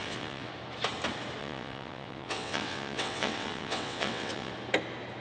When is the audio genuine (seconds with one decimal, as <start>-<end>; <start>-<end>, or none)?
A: 0.5-1.4; 4.5-5.2